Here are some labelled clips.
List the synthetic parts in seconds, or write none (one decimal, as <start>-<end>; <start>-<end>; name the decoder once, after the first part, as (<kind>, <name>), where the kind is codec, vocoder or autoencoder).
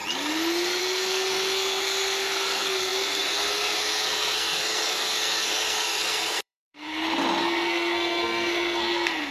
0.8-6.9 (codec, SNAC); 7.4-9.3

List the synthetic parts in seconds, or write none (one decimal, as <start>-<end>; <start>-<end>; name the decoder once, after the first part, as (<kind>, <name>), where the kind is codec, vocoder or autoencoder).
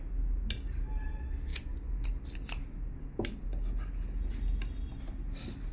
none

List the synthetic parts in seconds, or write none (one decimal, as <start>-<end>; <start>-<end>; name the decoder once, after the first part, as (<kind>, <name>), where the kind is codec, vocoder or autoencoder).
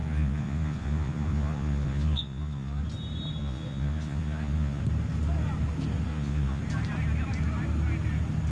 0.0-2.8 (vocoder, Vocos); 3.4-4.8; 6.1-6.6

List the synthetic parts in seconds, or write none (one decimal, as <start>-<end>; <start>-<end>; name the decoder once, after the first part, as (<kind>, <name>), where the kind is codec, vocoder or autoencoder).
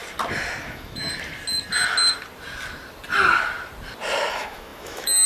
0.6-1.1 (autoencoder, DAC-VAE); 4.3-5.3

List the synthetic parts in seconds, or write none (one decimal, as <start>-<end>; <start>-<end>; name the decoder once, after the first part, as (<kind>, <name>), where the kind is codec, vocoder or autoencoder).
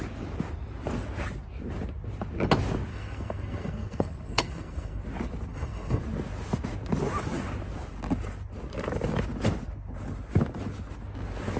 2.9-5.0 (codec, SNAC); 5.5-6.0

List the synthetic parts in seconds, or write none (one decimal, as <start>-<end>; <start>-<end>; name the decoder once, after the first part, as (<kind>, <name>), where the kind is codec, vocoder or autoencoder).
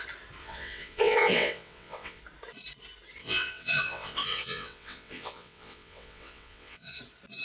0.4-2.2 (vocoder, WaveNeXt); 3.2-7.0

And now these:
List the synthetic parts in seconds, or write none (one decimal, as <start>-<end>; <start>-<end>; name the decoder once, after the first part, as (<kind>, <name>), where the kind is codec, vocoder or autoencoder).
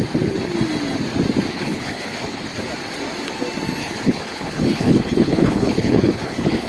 1.5-2.5 (codec, HILCodec); 3.8-6.7